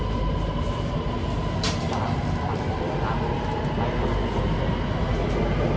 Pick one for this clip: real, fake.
real